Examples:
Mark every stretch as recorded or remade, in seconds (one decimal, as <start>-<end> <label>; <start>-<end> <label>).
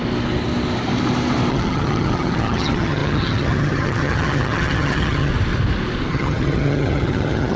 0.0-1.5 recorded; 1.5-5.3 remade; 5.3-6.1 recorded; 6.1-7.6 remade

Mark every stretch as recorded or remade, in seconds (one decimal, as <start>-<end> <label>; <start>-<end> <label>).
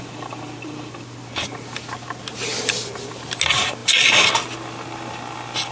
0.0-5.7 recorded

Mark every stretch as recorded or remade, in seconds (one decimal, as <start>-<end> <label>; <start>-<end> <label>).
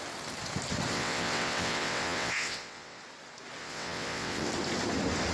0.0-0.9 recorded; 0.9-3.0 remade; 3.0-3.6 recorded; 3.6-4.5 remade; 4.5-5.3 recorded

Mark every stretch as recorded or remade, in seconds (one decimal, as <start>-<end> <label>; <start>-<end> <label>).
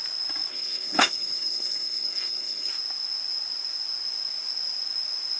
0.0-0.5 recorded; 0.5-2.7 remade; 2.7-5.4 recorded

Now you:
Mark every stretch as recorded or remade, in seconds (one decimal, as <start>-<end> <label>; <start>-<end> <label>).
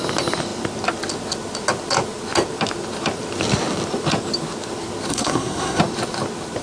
0.0-5.1 recorded; 5.1-5.8 remade; 5.8-6.6 recorded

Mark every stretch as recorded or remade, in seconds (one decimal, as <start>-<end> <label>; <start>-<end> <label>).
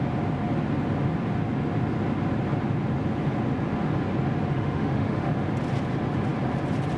0.0-4.5 recorded; 4.5-5.3 remade; 5.3-7.0 recorded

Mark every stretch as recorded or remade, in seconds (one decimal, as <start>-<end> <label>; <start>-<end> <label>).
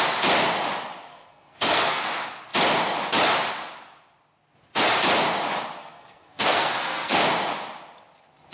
0.0-1.1 recorded; 1.1-2.0 remade; 2.0-5.8 recorded; 5.8-7.2 remade; 7.2-8.5 recorded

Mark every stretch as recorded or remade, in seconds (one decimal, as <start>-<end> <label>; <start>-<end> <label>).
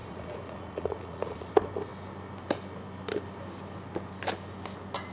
0.0-1.5 remade; 1.5-5.1 recorded